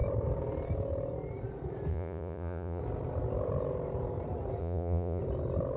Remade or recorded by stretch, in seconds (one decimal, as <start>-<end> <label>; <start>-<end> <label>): 0.0-1.9 recorded; 1.9-2.8 remade; 2.8-4.6 recorded; 4.6-5.2 remade; 5.2-5.8 recorded